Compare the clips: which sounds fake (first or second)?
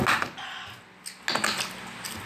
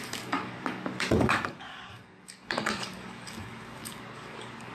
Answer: second